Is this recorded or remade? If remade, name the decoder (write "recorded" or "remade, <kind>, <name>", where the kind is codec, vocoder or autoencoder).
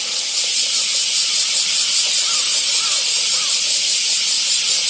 recorded